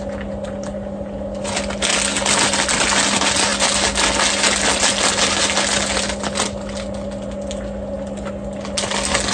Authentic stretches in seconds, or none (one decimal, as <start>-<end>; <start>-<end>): 0.0-9.3